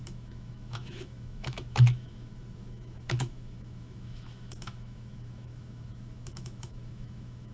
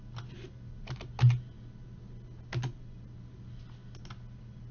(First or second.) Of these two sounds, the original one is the second